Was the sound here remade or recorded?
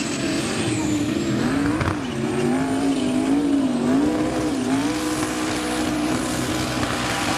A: recorded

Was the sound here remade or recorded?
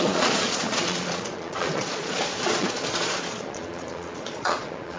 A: remade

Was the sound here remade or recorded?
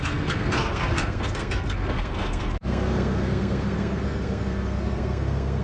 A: remade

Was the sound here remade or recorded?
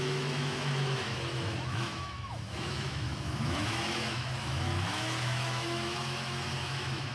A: remade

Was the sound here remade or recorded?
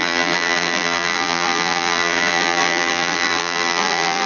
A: remade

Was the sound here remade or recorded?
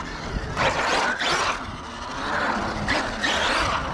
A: recorded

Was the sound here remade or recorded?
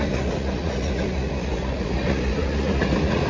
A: remade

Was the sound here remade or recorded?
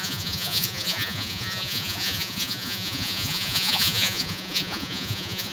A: remade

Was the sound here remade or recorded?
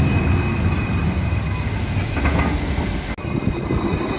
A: recorded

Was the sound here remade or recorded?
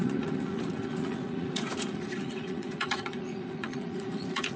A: remade